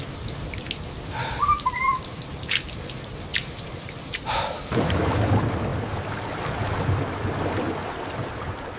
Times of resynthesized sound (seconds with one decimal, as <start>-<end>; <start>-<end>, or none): 3.3-5.1